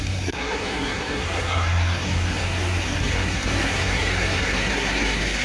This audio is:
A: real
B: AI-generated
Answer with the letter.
B